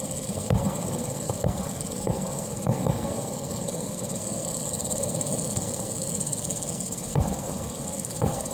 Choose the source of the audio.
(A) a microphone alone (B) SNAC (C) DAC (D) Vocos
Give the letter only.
B